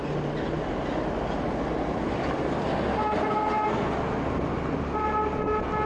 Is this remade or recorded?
recorded